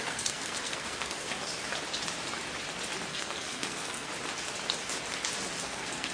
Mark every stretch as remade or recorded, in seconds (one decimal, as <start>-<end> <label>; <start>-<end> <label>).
0.0-1.5 remade; 1.5-3.1 recorded; 3.1-4.1 remade; 4.1-5.6 recorded; 5.6-6.1 remade